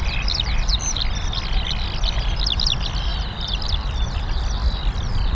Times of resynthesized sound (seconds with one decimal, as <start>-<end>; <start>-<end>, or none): none